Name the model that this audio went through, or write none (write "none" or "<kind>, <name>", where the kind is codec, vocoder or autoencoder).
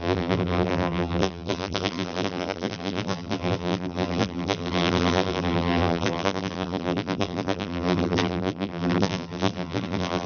vocoder, BigVGAN v2